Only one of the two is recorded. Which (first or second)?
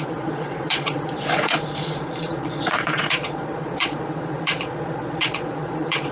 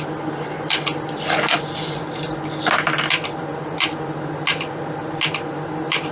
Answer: second